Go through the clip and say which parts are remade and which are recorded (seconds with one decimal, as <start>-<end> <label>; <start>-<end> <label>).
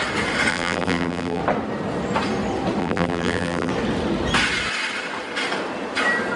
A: 0.0-0.5 recorded; 0.5-1.4 remade; 1.4-2.8 recorded; 2.8-3.7 remade; 3.7-6.4 recorded